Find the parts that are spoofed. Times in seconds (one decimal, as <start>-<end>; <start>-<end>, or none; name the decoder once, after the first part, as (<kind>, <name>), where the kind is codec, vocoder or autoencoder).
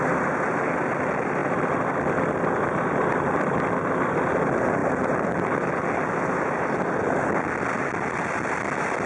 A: none